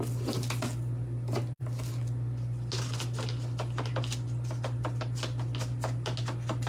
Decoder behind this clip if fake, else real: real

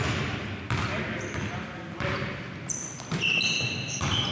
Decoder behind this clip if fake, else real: real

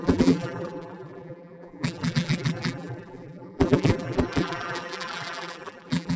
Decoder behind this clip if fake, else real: fake, vocoder, BigVGAN v2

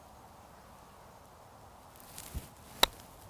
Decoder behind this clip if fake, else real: real